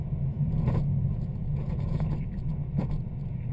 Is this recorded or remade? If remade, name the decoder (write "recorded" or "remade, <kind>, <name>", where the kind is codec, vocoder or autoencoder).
remade, vocoder, Vocos